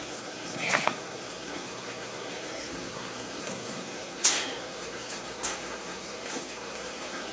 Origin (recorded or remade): remade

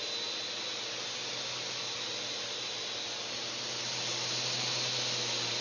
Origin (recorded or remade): recorded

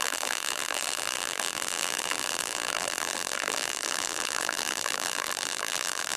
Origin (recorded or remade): remade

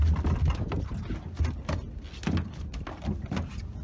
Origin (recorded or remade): recorded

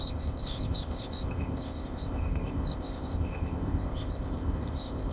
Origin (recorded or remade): remade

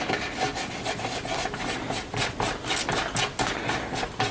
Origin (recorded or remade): recorded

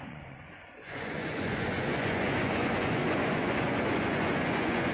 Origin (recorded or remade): remade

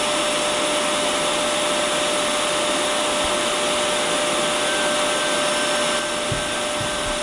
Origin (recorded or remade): recorded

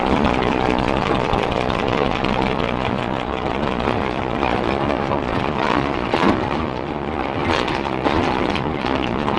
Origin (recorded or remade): remade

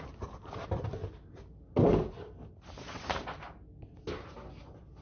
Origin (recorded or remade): recorded